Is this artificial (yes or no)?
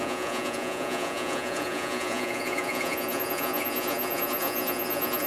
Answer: yes